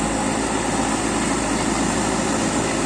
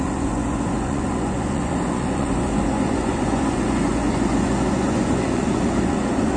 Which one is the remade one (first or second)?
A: second